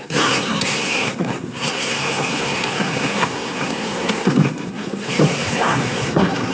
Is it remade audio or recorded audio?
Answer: remade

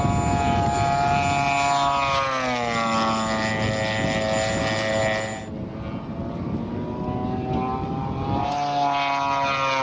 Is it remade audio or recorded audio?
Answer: recorded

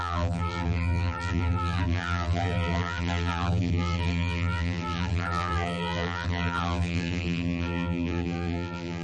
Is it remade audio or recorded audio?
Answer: remade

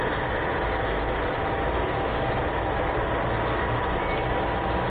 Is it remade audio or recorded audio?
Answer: recorded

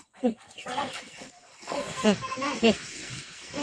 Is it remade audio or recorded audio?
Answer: remade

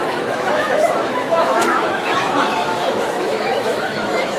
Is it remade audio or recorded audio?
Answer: remade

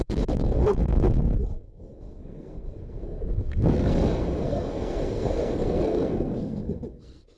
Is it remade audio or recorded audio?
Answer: remade